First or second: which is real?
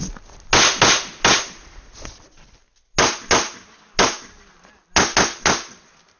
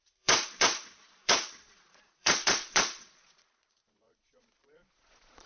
first